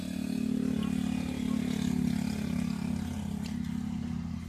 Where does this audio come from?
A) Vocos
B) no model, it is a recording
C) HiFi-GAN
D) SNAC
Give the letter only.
B